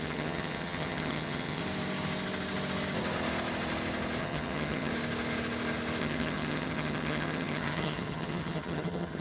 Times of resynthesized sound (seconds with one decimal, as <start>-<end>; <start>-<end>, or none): 0.0-1.6; 4.2-4.9; 6.0-9.2